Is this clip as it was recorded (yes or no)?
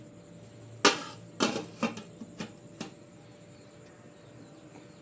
yes